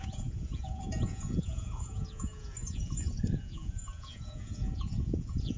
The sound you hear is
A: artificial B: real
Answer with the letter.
A